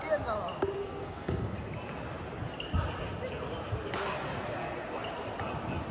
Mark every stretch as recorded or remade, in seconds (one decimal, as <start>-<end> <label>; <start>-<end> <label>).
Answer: 0.0-0.8 recorded; 0.8-1.4 remade; 1.4-5.9 recorded